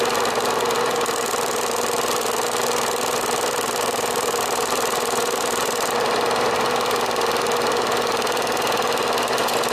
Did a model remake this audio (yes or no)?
no